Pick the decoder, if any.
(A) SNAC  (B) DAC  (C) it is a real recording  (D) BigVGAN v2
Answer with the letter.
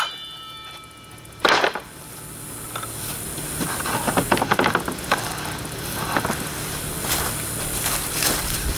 D